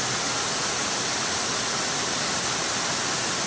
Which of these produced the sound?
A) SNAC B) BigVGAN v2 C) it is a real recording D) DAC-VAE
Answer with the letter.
C